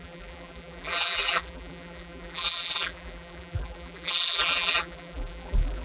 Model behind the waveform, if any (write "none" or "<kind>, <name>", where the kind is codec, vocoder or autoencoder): vocoder, BigVGAN v2